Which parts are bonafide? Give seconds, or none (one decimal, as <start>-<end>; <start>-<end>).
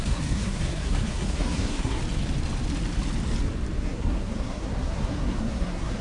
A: 2.0-3.8